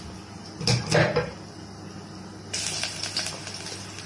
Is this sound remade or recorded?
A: recorded